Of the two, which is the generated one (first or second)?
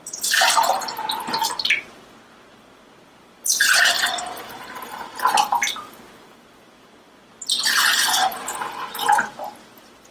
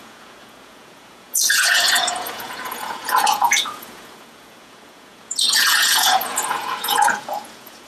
second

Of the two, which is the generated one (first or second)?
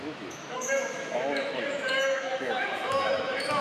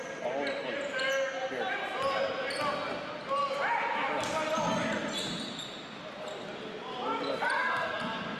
first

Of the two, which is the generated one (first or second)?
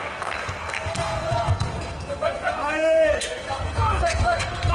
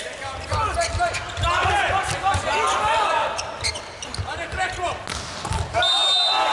first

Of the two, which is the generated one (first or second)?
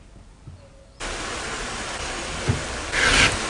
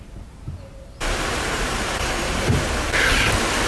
second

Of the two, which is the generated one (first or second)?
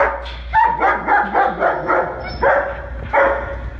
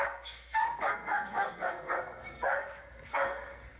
second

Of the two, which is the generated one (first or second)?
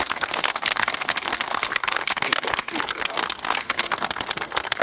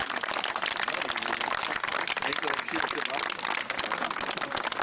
first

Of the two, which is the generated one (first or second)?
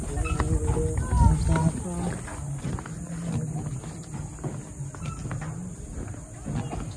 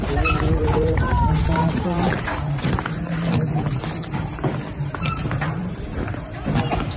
second